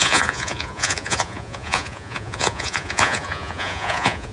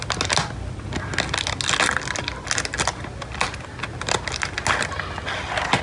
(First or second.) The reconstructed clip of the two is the first